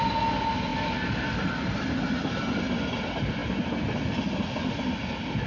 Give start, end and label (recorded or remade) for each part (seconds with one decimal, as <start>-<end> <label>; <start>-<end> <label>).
0.0-5.5 recorded